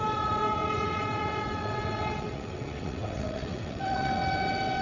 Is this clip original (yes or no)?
no